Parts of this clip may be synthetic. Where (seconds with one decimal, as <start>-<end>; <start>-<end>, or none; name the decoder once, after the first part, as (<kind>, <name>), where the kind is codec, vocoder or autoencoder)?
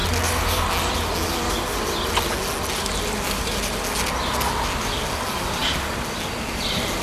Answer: none